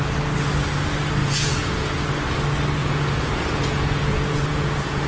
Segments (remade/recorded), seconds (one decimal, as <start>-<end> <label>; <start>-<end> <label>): 0.0-1.2 recorded; 1.2-2.1 remade; 2.1-2.8 recorded; 2.8-5.1 remade